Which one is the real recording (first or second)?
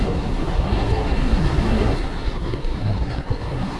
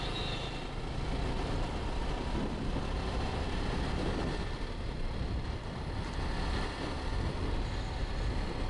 second